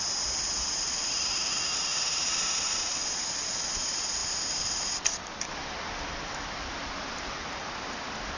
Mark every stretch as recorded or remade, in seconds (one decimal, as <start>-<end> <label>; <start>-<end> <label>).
0.0-8.4 recorded